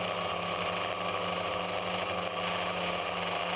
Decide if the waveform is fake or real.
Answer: real